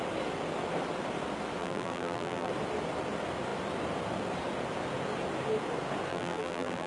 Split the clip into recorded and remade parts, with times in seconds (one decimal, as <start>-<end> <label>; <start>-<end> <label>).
0.0-1.6 recorded; 1.6-2.5 remade; 2.5-6.1 recorded; 6.1-6.9 remade